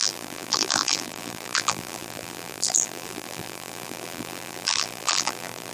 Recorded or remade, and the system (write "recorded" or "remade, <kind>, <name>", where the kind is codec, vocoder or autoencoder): remade, vocoder, BigVGAN v2